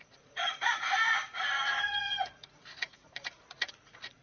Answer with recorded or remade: remade